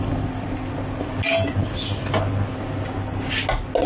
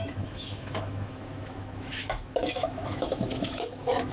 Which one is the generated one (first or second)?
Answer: second